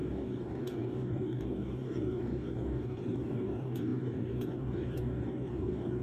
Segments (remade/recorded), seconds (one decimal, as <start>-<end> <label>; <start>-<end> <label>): 0.0-6.0 remade

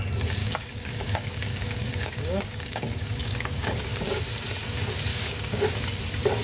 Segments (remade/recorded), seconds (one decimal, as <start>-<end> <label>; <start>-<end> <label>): 0.0-0.4 recorded; 0.4-4.2 remade; 4.2-5.1 recorded; 5.1-5.7 remade; 5.7-6.4 recorded

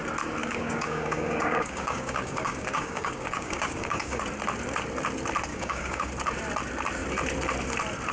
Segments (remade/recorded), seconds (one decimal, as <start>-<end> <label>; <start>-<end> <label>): 0.0-0.4 recorded; 0.4-4.2 remade; 4.2-5.5 recorded; 5.5-6.1 remade; 6.1-8.1 recorded